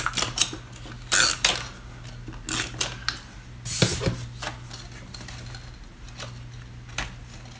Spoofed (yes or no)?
no